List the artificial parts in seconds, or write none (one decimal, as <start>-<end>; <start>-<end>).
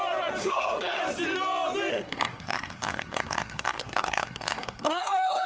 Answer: 0.4-1.0; 1.9-5.5